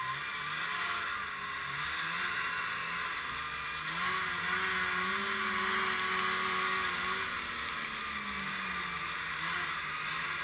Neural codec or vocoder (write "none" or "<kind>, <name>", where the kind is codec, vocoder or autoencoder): none